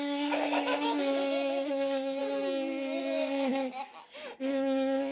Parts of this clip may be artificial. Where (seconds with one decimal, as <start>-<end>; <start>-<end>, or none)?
0.0-2.2; 3.0-3.9; 4.5-5.1